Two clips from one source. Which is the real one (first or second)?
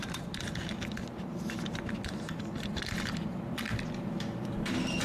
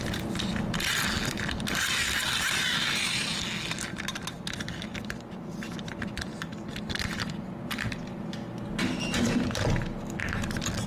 second